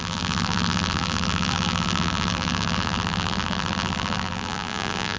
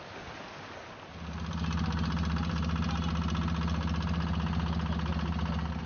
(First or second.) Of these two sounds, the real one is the second